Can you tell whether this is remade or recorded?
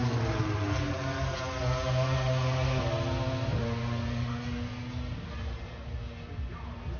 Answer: recorded